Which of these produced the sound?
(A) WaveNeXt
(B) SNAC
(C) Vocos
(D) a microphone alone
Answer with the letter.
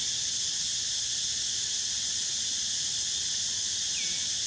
D